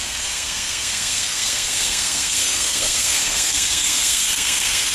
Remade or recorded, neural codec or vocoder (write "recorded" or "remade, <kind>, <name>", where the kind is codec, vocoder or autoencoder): remade, codec, SNAC